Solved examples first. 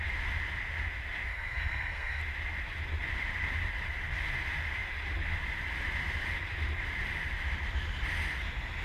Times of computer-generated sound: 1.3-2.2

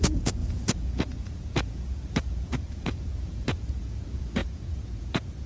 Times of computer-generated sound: 0.0-5.5

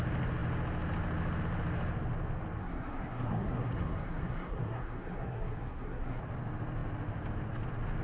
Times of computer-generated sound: 2.6-6.2

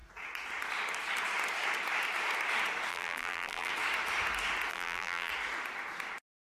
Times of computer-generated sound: 2.9-3.7; 4.7-5.3

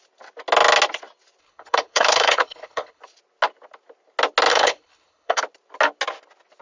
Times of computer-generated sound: 1.4-3.0; 4.5-5.4

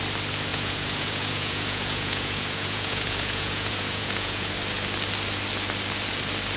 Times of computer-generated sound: 0.5-4.5